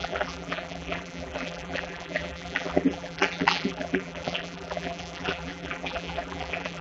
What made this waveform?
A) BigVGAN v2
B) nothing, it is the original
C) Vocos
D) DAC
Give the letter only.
A